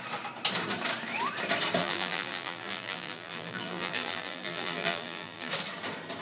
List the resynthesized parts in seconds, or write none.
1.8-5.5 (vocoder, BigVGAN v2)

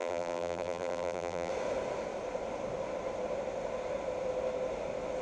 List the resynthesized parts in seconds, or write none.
0.0-1.5 (vocoder, BigVGAN v2)

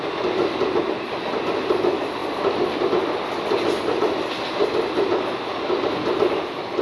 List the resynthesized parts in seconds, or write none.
none

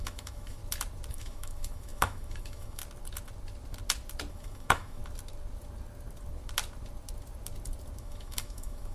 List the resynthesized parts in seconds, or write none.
0.0-0.6 (autoencoder, DAC-VAE); 1.1-2.8; 4.3-5.0; 8.0-8.9

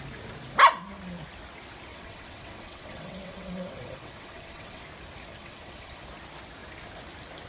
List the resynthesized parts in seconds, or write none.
1.9-4.8 (vocoder, WaveNeXt); 5.3-6.0